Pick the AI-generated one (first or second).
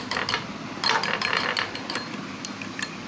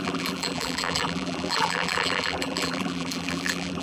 second